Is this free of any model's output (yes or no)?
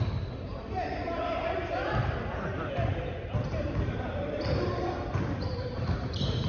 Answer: no